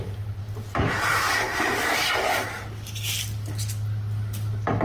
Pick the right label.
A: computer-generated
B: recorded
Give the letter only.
B